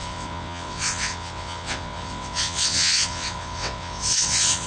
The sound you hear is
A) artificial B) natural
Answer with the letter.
A